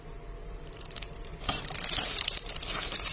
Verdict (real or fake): fake